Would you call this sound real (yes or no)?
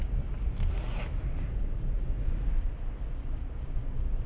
yes